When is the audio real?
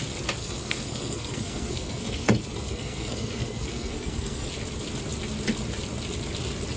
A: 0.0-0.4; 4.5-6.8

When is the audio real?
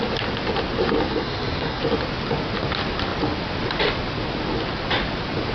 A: 0.0-1.1; 1.8-5.5